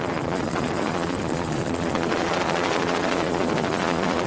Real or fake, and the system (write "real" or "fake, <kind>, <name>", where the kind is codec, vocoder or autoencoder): fake, vocoder, Vocos